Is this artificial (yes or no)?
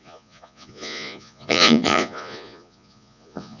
yes